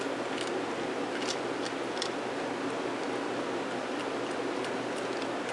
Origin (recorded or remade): recorded